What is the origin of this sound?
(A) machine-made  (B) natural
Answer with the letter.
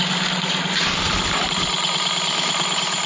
B